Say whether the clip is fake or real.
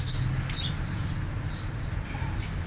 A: real